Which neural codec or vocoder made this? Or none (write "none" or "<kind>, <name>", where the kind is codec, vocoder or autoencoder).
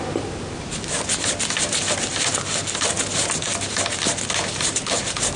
none